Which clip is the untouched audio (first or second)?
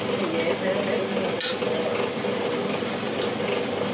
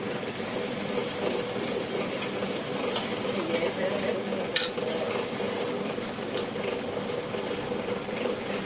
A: first